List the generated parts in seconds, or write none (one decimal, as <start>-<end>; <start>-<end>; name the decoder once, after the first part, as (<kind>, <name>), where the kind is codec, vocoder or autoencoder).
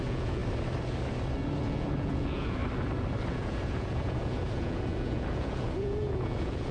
0.0-0.4 (vocoder, Vocos); 1.6-2.6; 3.3-6.7